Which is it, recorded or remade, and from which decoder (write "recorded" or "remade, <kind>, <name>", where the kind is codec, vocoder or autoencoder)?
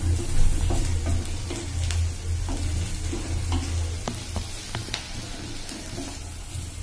recorded